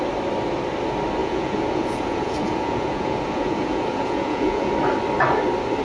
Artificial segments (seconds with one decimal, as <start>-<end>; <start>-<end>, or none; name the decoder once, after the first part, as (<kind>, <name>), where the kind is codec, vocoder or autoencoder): 1.2-4.7 (vocoder, Vocos)